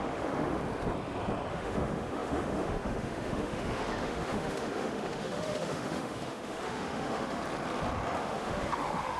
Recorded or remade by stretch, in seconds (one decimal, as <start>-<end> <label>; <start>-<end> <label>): 0.0-0.6 remade; 0.6-1.5 recorded; 1.5-7.4 remade; 7.4-8.2 recorded; 8.2-9.2 remade